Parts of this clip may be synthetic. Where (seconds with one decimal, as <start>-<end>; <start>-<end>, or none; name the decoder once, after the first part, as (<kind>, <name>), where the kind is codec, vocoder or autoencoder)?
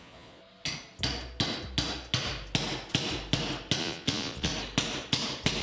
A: 0.0-0.4 (vocoder, Vocos); 3.8-4.5